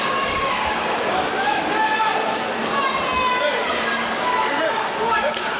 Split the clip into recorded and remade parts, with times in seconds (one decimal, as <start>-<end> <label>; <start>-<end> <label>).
0.0-2.1 remade; 2.1-4.0 recorded; 4.0-5.6 remade